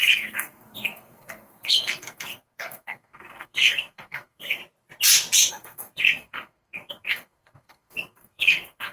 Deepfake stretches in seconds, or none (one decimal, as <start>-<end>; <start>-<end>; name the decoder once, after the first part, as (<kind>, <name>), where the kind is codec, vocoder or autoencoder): 0.0-4.6 (codec, SNAC); 5.5-8.9

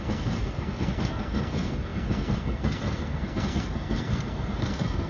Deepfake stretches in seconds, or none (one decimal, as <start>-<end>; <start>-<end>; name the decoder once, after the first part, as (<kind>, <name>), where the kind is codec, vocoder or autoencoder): 0.0-5.1 (codec, SNAC)

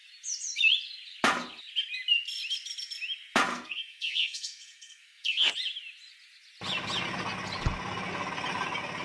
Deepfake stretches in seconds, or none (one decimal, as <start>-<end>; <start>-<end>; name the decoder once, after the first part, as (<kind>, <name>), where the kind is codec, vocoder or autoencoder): 3.5-5.5 (codec, SNAC)

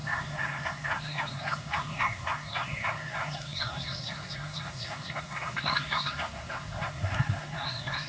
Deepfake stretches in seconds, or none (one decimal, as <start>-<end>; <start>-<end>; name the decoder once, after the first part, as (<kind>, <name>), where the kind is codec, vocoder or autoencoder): 0.0-8.1 (codec, SNAC)

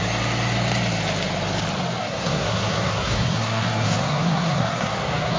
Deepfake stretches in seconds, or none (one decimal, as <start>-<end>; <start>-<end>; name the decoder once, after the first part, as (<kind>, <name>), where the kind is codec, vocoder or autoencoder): 2.0-5.4 (codec, SNAC)

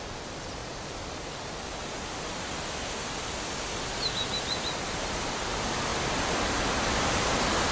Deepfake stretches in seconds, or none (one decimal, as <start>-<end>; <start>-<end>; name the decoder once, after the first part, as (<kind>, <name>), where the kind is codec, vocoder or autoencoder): none

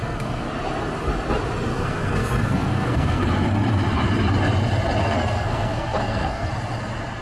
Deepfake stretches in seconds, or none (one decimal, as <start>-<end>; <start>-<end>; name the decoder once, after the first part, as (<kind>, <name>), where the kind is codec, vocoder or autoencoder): 0.0-0.5 (codec, SNAC); 1.7-3.3; 5.0-6.5